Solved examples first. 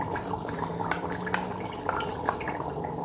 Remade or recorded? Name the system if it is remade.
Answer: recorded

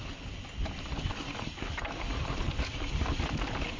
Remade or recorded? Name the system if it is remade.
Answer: recorded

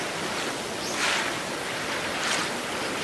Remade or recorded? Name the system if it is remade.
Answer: recorded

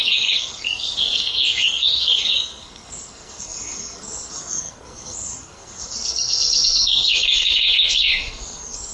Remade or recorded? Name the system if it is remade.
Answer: remade, codec, SNAC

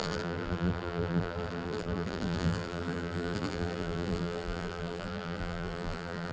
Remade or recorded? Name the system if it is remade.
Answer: remade, vocoder, BigVGAN v2